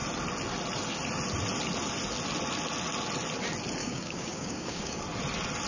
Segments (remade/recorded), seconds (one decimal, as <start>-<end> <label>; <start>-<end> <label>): 0.0-3.8 recorded; 3.8-5.0 remade; 5.0-5.7 recorded